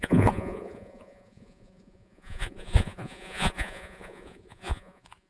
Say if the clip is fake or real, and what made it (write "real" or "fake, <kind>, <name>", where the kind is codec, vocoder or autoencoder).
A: fake, vocoder, Vocos